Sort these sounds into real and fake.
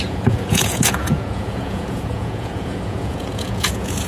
fake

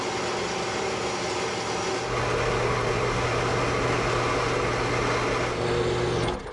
real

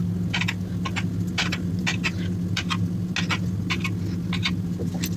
real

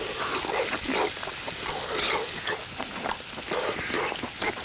real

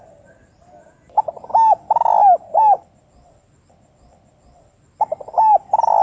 real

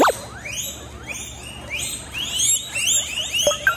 real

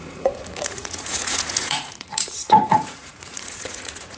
fake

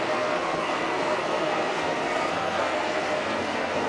fake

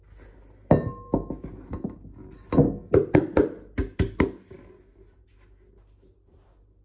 real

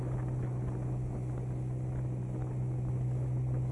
real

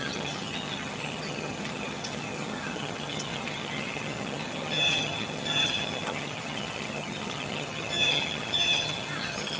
fake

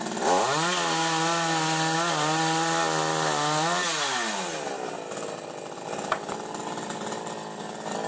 real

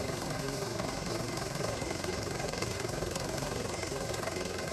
fake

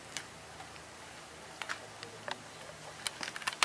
real